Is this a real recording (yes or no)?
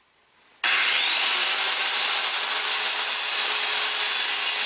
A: yes